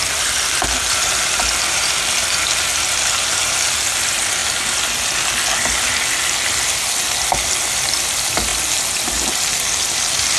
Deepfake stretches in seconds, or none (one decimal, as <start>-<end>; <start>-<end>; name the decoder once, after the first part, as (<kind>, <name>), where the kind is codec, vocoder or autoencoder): none